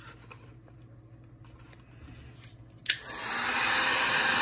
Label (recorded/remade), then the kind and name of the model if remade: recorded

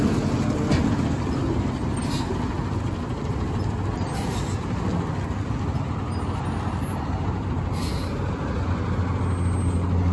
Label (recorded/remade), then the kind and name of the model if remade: recorded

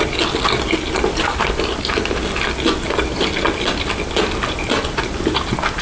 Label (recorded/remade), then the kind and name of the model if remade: recorded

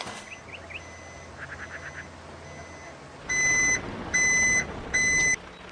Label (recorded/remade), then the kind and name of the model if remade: recorded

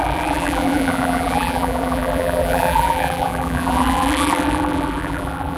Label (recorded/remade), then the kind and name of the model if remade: remade, vocoder, BigVGAN v2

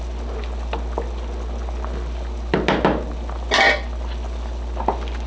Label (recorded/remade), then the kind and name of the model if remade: recorded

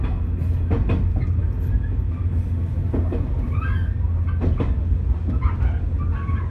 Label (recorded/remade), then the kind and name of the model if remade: recorded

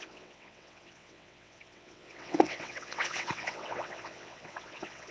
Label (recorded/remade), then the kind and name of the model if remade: remade, vocoder, WaveNeXt